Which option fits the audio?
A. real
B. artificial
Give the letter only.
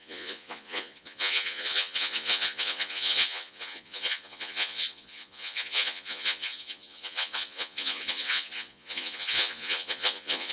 B